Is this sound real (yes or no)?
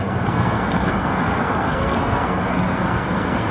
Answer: no